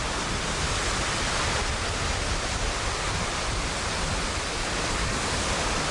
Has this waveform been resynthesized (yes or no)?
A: no